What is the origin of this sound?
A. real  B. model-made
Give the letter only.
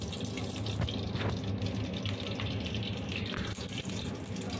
A